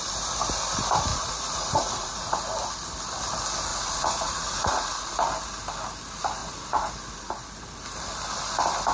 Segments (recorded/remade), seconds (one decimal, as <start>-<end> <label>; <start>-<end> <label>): 0.0-1.1 recorded; 1.1-2.4 remade; 2.4-3.7 recorded; 3.7-5.1 remade; 5.1-6.4 recorded; 6.4-6.9 remade; 6.9-8.9 recorded